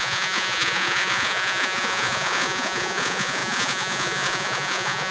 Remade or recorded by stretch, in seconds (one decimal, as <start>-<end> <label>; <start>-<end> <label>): 0.0-5.1 remade